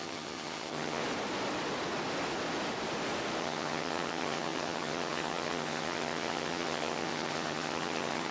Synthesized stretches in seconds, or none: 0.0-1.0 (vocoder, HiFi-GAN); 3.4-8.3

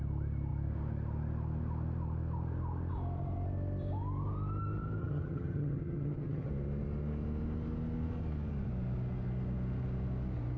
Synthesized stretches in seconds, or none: 5.0-6.5 (vocoder, HiFi-GAN)

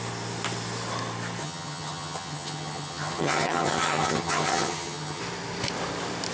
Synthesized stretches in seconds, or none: 1.4-5.2 (vocoder, HiFi-GAN)

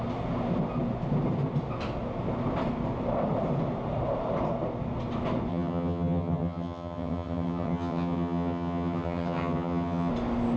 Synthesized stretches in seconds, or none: 5.5-10.1 (vocoder, HiFi-GAN)

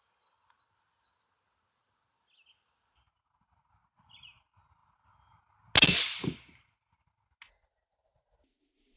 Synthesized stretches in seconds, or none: none

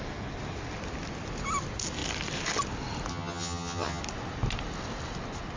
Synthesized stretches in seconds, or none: 3.1-4.0 (vocoder, HiFi-GAN)